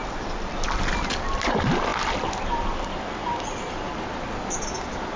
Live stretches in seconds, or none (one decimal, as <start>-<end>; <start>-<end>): 0.0-5.2